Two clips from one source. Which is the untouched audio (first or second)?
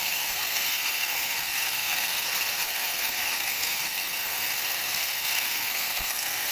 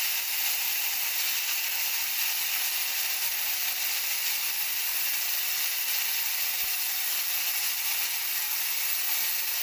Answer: second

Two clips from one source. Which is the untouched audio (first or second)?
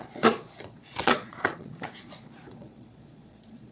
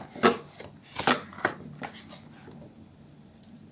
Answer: second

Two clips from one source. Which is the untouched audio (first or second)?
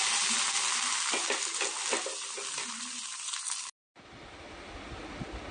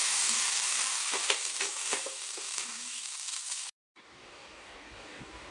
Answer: first